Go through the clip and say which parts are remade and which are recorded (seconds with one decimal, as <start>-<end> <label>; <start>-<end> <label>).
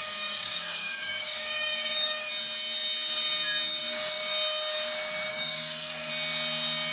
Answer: 0.0-2.3 remade; 2.3-5.3 recorded; 5.3-6.1 remade; 6.1-6.9 recorded